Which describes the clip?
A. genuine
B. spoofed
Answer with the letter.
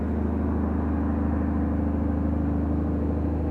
A